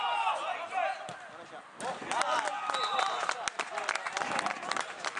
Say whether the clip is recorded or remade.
recorded